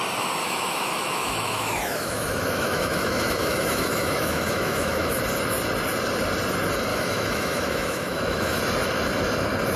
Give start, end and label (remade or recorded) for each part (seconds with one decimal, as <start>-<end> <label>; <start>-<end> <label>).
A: 0.0-0.4 recorded; 0.4-5.2 remade; 5.2-6.9 recorded; 6.9-8.6 remade; 8.6-9.8 recorded